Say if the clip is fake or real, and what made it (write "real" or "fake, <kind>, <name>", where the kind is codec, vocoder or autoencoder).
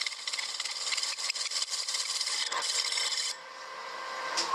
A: real